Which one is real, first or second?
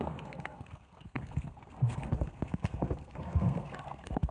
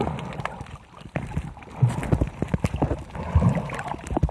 second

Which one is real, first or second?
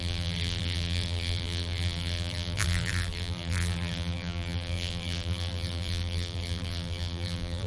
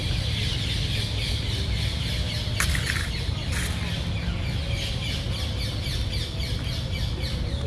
second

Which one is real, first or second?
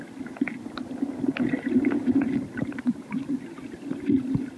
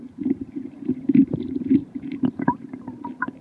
first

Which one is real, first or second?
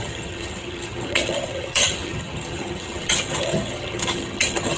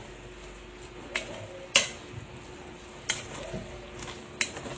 second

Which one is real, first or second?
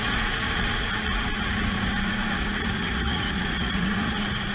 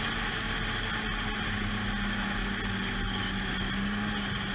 second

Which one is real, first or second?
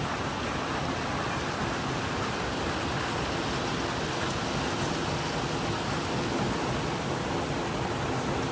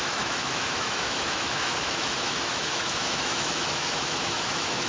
first